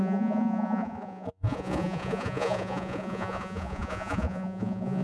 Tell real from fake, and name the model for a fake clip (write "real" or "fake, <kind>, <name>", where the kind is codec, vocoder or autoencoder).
fake, vocoder, Vocos